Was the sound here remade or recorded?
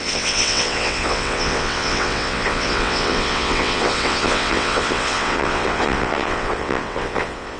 remade